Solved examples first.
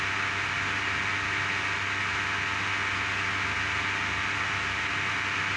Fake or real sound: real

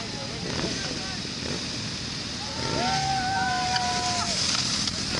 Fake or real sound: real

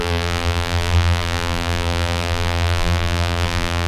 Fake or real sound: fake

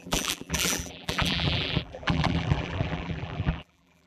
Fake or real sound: fake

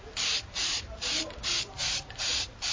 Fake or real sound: fake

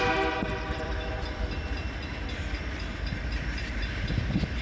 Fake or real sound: fake